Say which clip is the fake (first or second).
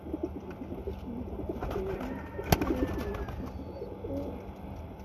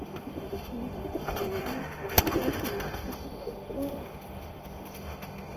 second